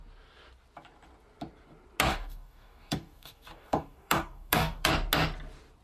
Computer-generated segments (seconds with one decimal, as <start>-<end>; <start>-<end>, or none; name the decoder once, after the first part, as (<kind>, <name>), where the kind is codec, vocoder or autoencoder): 2.1-4.9 (codec, DAC)